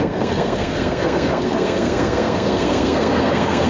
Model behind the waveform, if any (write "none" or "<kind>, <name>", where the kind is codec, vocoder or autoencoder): codec, SNAC